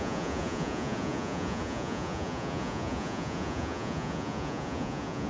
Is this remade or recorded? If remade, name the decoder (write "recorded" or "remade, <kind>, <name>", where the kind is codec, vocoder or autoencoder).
remade, vocoder, Vocos